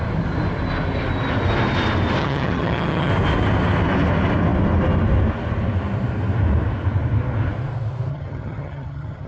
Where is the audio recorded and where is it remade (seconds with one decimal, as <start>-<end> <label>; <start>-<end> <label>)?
0.0-2.2 recorded; 2.2-3.1 remade; 3.1-8.1 recorded; 8.1-9.3 remade